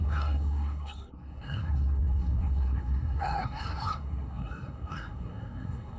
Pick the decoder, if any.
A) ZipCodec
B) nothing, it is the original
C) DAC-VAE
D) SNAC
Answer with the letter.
D